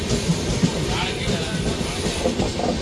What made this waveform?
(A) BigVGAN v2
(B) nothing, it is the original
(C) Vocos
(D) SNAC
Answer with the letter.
B